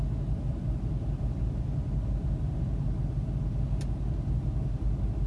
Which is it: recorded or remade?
recorded